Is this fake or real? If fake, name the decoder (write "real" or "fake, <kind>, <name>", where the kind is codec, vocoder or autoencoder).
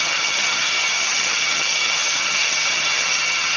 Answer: fake, vocoder, HiFi-GAN